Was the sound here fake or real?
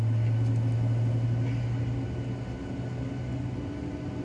real